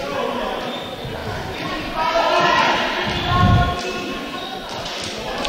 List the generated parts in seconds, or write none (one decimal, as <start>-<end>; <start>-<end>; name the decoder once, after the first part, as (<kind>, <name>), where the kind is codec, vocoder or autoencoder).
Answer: none